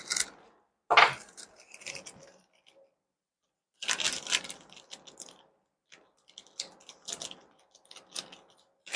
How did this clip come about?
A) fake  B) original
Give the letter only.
B